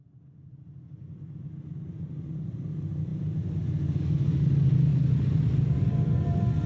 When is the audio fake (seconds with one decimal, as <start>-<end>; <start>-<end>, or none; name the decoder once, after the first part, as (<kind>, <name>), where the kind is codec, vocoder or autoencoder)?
none